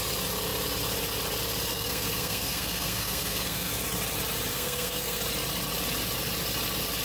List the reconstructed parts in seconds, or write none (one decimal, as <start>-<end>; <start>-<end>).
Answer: 1.7-3.7; 4.5-5.2

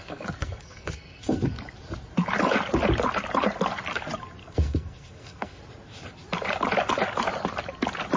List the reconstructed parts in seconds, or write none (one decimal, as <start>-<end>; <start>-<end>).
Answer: 0.0-1.5; 4.4-5.6

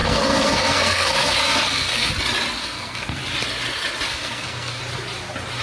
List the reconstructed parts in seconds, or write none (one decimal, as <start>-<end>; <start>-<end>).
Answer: 0.0-2.1; 2.6-3.2; 4.1-4.8

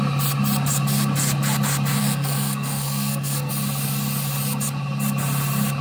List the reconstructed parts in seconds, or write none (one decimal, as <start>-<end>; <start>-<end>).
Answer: 2.0-3.5

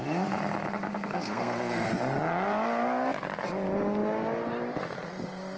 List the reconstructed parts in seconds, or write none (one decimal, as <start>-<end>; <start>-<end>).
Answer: 0.9-1.9